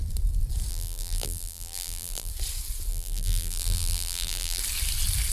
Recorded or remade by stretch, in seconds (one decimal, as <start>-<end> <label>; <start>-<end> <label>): 0.0-0.7 recorded; 0.7-2.3 remade; 2.3-2.9 recorded; 2.9-4.6 remade; 4.6-5.3 recorded